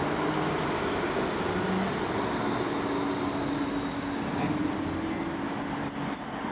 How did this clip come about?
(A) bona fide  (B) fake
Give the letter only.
A